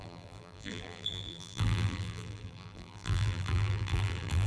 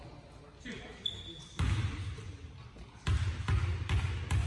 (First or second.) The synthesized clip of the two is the first